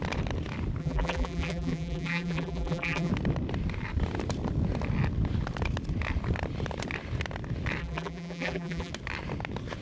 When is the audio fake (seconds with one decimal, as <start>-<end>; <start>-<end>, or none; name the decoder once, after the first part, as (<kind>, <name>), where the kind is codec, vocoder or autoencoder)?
0.8-3.1 (vocoder, BigVGAN v2); 7.8-8.9